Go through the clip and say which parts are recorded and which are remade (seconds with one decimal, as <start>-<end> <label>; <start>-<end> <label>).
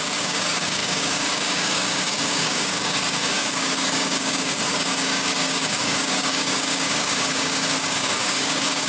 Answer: 0.0-8.9 remade